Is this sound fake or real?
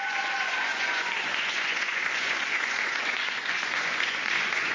fake